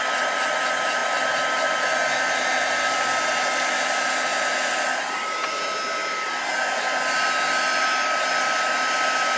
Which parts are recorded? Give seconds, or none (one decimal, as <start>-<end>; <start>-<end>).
0.0-9.4